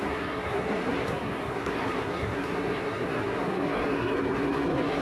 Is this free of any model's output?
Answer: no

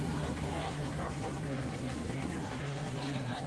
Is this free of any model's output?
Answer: no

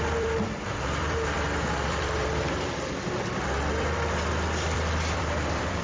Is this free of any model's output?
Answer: no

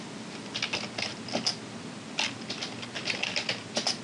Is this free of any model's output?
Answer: yes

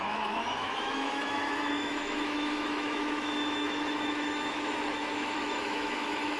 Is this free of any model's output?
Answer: no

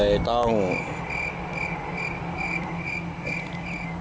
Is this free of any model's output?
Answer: yes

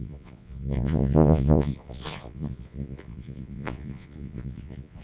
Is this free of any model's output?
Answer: no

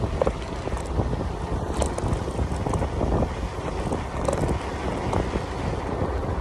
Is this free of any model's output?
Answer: yes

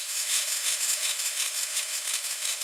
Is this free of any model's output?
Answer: no